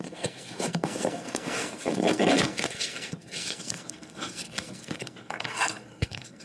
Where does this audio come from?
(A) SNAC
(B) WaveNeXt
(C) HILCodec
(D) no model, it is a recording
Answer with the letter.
A